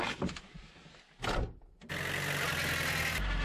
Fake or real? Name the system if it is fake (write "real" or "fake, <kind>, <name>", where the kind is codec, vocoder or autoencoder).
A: real